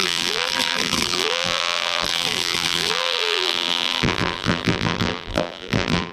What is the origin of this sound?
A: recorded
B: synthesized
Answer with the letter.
B